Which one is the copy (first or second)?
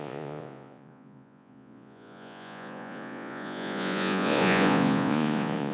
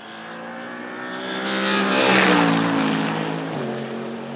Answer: first